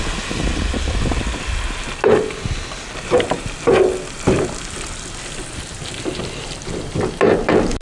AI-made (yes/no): no